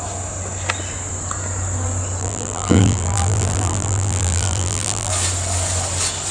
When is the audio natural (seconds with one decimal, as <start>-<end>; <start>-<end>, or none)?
0.0-2.2; 5.1-6.3